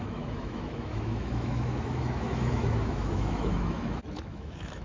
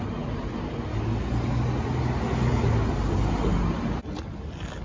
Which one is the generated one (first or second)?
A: first